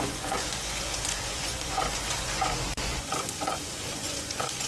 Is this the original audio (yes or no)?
no